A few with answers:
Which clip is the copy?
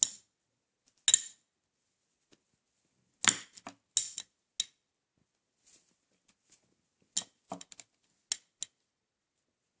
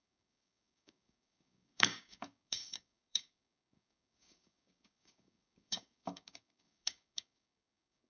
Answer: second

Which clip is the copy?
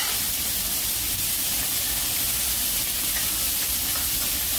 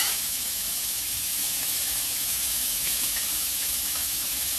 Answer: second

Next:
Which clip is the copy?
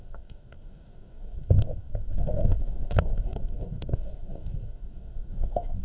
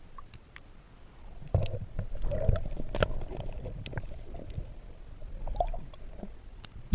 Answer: first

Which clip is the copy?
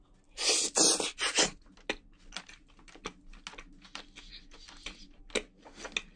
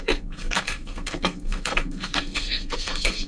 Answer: second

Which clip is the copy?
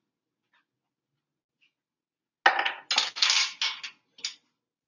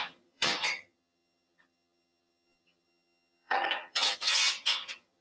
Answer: second